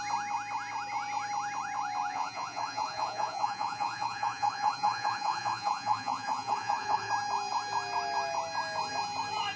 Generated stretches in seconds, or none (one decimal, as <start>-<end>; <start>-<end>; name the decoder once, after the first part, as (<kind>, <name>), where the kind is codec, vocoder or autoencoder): 2.1-7.1 (vocoder, Vocos)